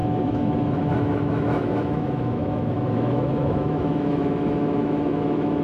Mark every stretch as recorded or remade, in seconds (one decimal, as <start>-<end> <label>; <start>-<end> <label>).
0.0-5.6 remade